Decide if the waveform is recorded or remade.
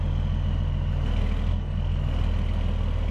recorded